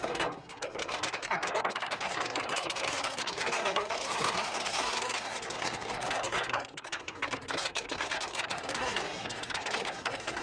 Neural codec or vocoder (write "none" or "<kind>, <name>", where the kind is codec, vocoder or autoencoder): codec, SNAC